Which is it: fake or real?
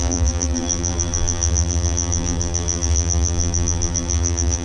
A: fake